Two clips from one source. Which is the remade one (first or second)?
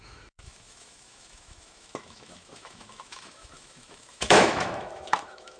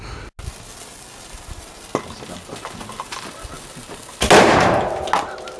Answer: first